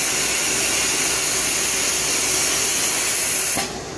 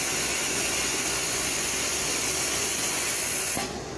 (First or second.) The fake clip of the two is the second